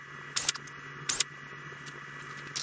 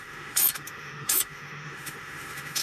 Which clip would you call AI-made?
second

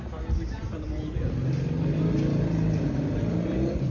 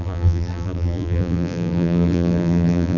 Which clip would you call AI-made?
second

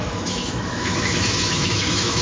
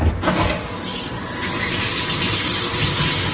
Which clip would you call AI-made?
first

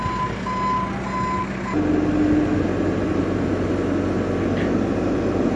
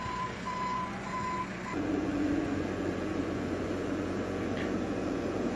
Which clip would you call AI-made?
second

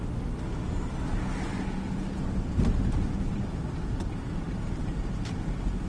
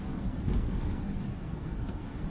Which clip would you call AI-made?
second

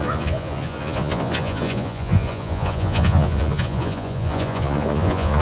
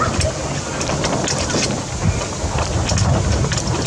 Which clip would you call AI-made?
first